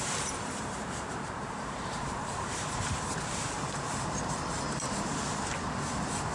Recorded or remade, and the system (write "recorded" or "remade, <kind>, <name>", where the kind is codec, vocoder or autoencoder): remade, vocoder, BigVGAN v2